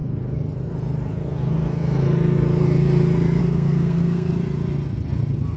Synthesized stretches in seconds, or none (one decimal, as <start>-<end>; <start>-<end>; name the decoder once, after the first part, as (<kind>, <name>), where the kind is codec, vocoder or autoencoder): 3.4-4.3 (codec, SNAC)